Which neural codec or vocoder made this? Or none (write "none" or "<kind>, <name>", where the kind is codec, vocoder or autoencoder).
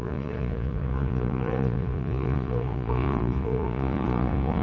vocoder, Vocos